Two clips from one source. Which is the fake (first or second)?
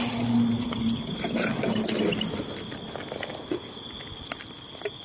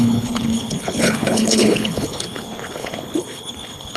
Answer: second